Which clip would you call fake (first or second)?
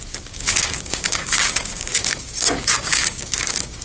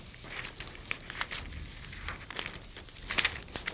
first